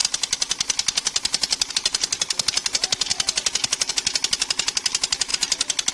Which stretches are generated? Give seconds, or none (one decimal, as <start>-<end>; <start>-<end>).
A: none

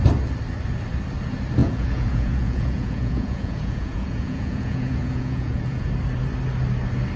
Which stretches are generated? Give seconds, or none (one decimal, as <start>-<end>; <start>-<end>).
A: 1.6-5.9

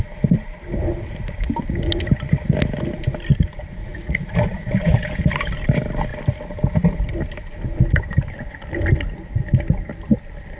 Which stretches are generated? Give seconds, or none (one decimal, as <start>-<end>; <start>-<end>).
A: 3.8-5.0

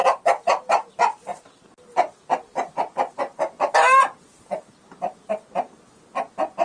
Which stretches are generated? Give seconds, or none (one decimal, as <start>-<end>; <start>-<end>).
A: none

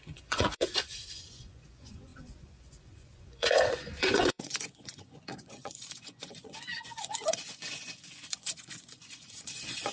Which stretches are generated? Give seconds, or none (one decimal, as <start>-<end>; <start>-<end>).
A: 0.0-9.9

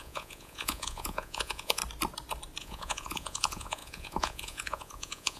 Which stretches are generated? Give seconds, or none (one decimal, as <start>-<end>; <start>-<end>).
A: 0.0-1.8; 2.6-5.4

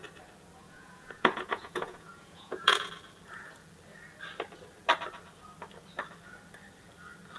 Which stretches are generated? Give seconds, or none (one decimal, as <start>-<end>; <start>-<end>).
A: 0.6-2.9